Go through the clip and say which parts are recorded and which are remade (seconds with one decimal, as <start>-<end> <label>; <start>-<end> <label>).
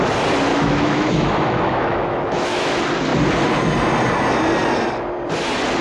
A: 0.0-0.5 recorded; 0.5-2.7 remade; 2.7-5.8 recorded